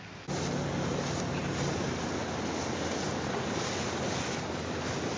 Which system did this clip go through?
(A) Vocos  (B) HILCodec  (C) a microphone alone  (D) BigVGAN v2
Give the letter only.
C